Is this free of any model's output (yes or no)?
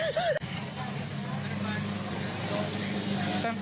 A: yes